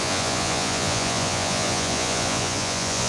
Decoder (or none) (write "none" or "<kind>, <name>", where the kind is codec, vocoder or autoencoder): vocoder, Vocos